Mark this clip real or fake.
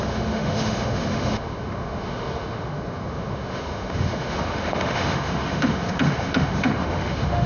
fake